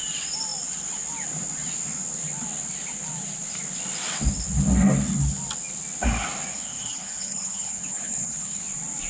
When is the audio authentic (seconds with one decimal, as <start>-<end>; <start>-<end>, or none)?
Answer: 0.0-6.5; 8.6-9.1